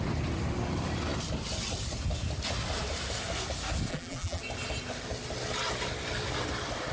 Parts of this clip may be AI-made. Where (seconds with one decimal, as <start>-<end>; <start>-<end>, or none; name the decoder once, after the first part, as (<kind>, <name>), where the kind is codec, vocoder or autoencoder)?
3.9-4.4 (vocoder, BigVGAN v2)